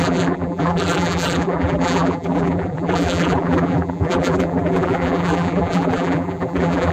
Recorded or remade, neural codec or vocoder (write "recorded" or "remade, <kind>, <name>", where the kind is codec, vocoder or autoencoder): remade, vocoder, BigVGAN v2